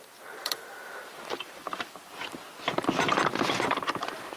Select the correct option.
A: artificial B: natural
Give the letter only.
A